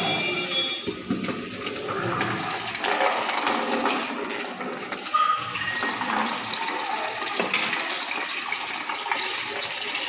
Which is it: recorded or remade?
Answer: recorded